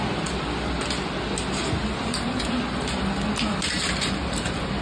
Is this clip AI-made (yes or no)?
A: no